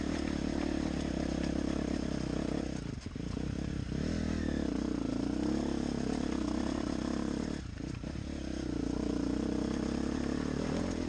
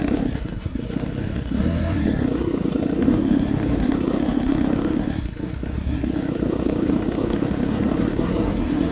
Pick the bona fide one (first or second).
first